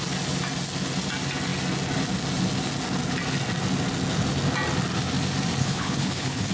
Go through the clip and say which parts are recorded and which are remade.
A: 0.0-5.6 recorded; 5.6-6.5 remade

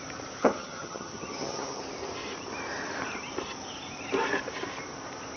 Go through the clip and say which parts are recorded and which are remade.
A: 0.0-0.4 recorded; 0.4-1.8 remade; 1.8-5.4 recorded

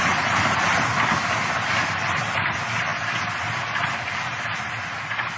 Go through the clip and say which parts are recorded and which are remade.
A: 0.0-5.4 recorded

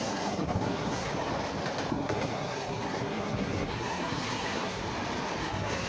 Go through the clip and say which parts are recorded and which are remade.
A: 0.0-1.1 remade; 1.1-1.9 recorded; 1.9-4.8 remade; 4.8-5.4 recorded; 5.4-5.9 remade